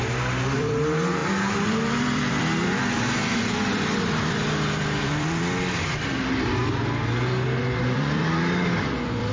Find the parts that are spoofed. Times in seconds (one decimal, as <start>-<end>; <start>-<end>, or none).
0.6-6.6; 7.6-9.3

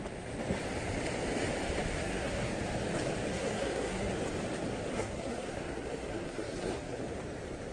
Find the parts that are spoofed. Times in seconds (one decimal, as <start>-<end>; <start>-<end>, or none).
1.8-2.5; 3.3-4.1; 4.9-7.0

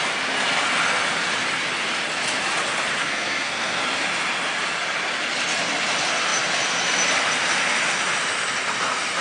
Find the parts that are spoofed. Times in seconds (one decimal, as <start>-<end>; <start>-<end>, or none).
3.0-3.8